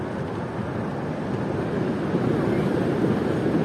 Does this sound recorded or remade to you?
recorded